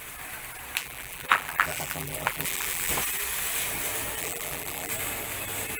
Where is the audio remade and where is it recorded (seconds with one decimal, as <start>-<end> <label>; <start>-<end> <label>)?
0.0-0.8 recorded; 0.8-2.9 remade; 2.9-4.2 recorded; 4.2-4.9 remade; 4.9-5.8 recorded